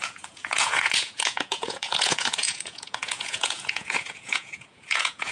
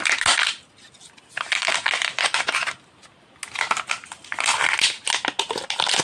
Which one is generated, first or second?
first